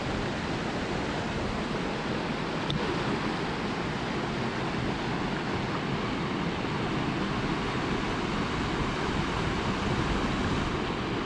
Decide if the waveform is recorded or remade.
recorded